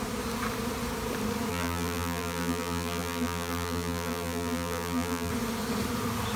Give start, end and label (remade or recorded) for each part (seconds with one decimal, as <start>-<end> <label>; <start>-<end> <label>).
0.0-1.5 recorded; 1.5-5.3 remade; 5.3-6.4 recorded